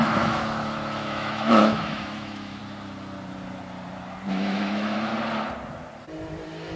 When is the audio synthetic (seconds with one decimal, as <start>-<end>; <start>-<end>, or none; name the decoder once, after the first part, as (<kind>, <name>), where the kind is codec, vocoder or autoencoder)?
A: 0.0-2.6 (autoencoder, DAC-VAE); 4.3-5.1